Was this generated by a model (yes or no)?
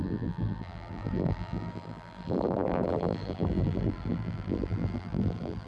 yes